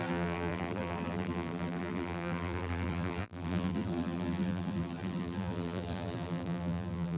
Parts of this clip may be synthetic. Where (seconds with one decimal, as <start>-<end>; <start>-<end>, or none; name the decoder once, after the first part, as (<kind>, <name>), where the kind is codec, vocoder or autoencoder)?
0.0-7.2 (vocoder, BigVGAN v2)